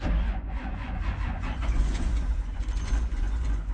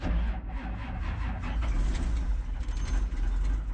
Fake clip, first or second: first